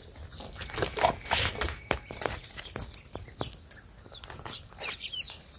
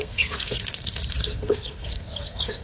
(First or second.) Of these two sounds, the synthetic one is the second